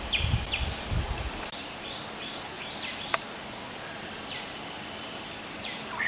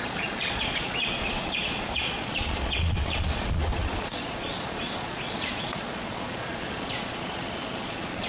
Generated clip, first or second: second